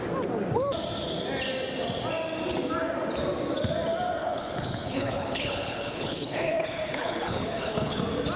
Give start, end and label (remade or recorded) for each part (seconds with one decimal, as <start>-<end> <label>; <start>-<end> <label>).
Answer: 0.0-4.2 recorded; 4.2-8.0 remade; 8.0-8.4 recorded